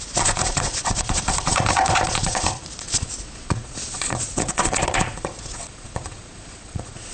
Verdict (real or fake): fake